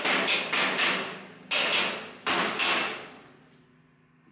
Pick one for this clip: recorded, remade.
recorded